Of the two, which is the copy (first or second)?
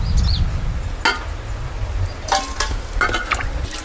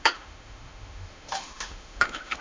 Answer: second